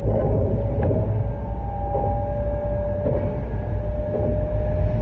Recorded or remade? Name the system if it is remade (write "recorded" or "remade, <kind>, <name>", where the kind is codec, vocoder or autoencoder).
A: recorded